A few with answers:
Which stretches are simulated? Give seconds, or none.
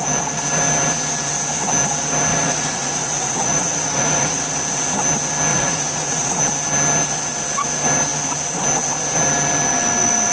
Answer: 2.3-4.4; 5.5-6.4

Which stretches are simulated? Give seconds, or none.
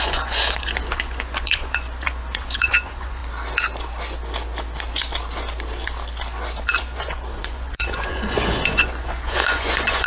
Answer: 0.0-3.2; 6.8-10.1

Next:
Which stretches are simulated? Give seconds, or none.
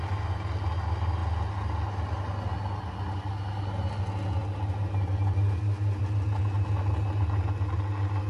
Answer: none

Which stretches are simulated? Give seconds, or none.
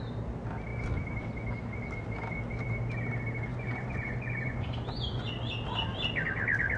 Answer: 3.5-5.3